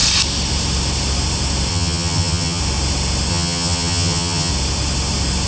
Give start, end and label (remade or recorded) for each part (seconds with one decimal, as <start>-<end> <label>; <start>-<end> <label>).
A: 0.0-1.7 recorded; 1.7-2.6 remade; 2.6-3.3 recorded; 3.3-4.5 remade; 4.5-5.5 recorded